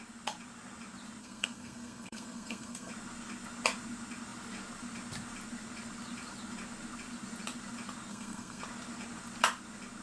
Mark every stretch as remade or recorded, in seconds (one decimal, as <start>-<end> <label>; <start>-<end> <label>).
0.0-1.2 recorded; 1.2-2.9 remade; 2.9-8.1 recorded; 8.1-8.6 remade; 8.6-10.0 recorded